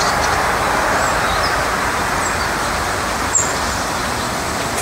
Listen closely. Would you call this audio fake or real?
real